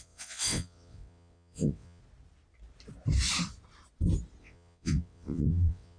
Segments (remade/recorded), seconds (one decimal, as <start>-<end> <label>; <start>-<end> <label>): 0.0-2.0 remade; 2.0-4.4 recorded; 4.4-6.0 remade